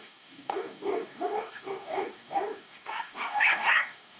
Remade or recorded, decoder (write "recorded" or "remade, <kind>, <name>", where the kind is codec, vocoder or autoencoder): remade, codec, DAC